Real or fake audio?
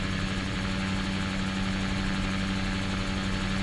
real